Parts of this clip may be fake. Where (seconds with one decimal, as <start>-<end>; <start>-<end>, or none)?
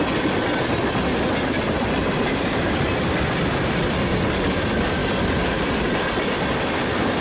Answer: none